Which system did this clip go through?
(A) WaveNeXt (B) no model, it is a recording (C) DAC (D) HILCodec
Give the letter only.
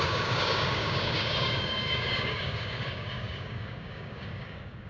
C